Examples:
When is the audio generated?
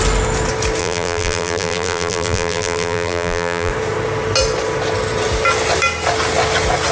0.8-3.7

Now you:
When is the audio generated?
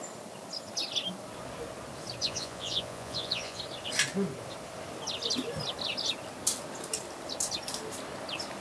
2.2-3.6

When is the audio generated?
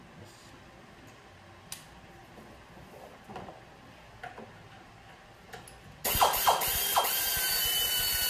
none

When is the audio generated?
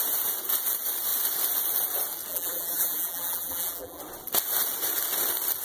2.3-4.0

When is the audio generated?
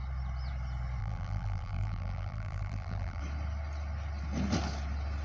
1.0-3.2